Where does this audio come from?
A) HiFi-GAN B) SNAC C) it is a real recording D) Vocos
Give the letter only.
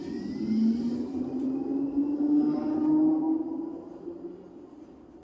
C